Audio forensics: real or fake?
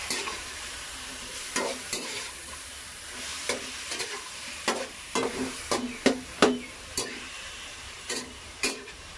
fake